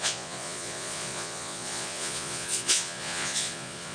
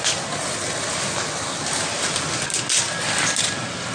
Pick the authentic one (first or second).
second